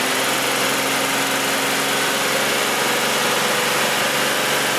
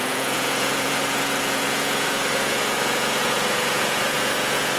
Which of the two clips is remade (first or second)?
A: second